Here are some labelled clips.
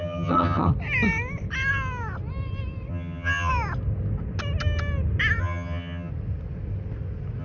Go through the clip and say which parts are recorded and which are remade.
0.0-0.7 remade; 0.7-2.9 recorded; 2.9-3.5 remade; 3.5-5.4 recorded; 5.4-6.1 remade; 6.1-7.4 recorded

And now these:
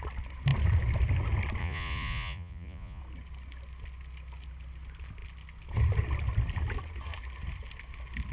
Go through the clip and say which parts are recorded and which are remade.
0.0-1.6 recorded; 1.6-3.0 remade; 3.0-8.3 recorded

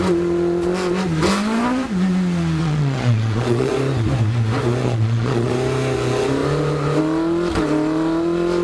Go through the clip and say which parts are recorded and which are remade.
0.0-2.6 recorded; 2.6-3.7 remade; 3.7-4.8 recorded; 4.8-5.5 remade; 5.5-8.6 recorded

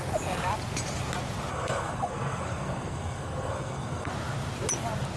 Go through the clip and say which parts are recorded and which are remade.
0.0-1.5 recorded; 1.5-4.1 remade; 4.1-5.2 recorded

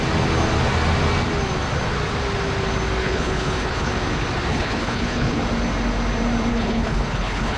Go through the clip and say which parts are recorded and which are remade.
0.0-3.0 recorded; 3.0-3.9 remade; 3.9-4.5 recorded; 4.5-5.4 remade; 5.4-6.5 recorded; 6.5-7.6 remade

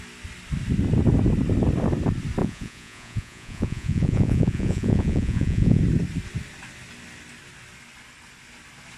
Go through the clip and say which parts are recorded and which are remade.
0.0-2.4 recorded; 2.4-5.8 remade; 5.8-9.0 recorded

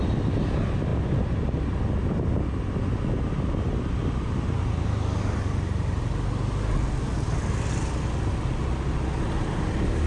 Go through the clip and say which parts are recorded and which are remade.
0.0-10.1 recorded

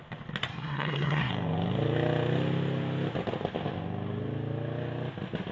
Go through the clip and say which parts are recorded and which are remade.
0.0-0.4 recorded; 0.4-1.3 remade; 1.3-5.5 recorded